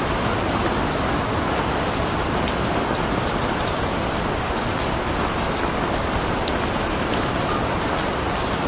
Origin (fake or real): real